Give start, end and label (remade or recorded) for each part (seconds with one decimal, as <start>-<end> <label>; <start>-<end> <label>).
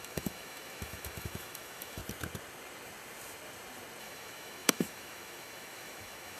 0.0-2.0 remade; 2.0-4.0 recorded; 4.0-6.4 remade